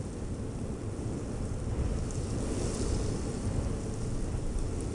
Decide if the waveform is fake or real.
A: real